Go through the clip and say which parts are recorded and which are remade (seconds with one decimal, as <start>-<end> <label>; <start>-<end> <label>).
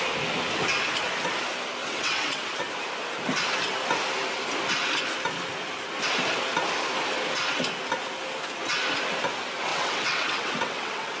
0.0-1.8 recorded; 1.8-2.6 remade; 2.6-9.7 recorded; 9.7-11.2 remade